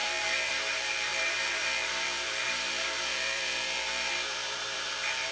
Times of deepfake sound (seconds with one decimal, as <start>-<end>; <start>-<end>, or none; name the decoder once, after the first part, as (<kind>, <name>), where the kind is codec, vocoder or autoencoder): 0.0-5.3 (vocoder, BigVGAN v2)